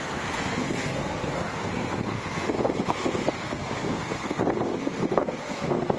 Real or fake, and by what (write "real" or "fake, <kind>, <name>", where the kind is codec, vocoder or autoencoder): fake, codec, SNAC